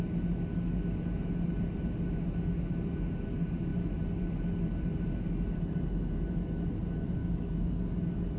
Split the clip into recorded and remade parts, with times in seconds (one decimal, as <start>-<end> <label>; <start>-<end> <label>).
0.0-7.2 recorded; 7.2-7.8 remade; 7.8-8.4 recorded